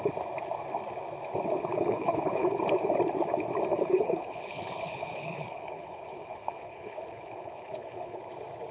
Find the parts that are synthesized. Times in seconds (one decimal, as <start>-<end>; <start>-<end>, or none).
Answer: 1.7-2.6; 3.7-8.2